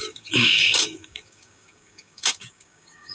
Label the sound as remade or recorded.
remade